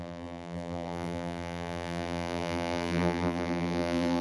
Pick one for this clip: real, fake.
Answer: fake